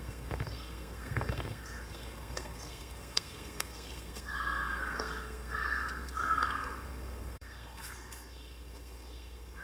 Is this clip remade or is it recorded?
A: remade